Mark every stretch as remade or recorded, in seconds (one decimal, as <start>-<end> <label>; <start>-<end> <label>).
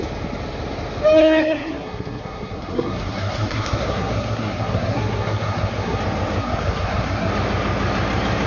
0.0-1.2 recorded; 1.2-6.0 remade; 6.0-6.4 recorded; 6.4-7.3 remade; 7.3-8.5 recorded